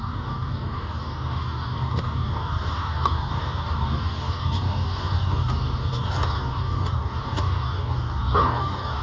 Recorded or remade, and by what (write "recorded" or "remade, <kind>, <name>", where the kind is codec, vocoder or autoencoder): remade, codec, DAC